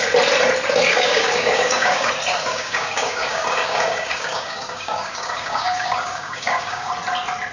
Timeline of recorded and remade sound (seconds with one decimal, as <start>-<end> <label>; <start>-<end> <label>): 0.0-0.9 recorded; 0.9-2.1 remade; 2.1-2.5 recorded; 2.5-6.9 remade; 6.9-7.5 recorded

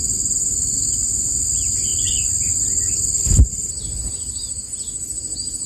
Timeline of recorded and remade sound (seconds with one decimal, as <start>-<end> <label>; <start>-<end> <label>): 0.0-5.7 recorded

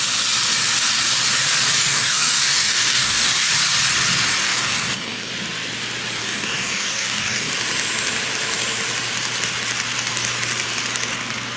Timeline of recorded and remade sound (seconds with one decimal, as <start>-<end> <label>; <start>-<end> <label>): 0.0-1.8 recorded; 1.8-3.5 remade; 3.5-4.4 recorded; 4.4-5.3 remade; 5.3-6.2 recorded; 6.2-7.5 remade; 7.5-11.6 recorded

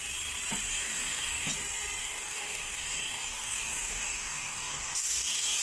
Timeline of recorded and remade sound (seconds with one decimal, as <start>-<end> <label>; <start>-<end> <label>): 0.0-0.7 recorded; 0.7-1.5 remade; 1.5-2.0 recorded; 2.0-5.6 remade

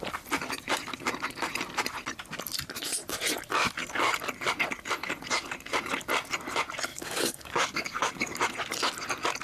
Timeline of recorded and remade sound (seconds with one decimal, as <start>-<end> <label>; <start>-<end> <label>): 0.0-6.9 recorded; 6.9-8.4 remade; 8.4-9.4 recorded

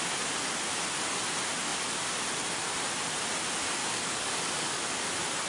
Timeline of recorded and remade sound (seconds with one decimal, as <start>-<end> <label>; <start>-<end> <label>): 0.0-3.8 recorded; 3.8-4.8 remade; 4.8-5.5 recorded